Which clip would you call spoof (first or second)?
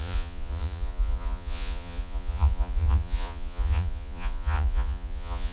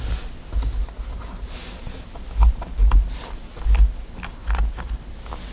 first